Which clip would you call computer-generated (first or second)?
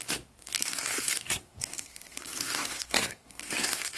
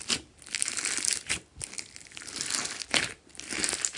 first